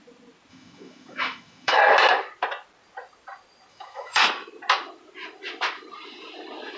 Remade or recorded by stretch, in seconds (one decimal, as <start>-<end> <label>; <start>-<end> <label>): 0.0-0.5 recorded; 0.5-1.8 remade; 1.8-3.7 recorded; 3.7-4.2 remade; 4.2-6.8 recorded